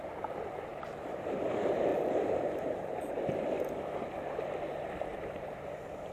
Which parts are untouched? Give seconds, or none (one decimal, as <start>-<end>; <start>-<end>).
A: 0.0-0.7; 1.4-1.9; 3.1-5.1